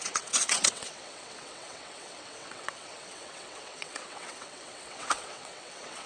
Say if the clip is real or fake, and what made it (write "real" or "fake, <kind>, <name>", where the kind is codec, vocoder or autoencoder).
fake, vocoder, WaveNeXt